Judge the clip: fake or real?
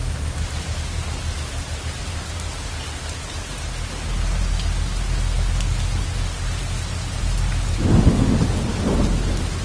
real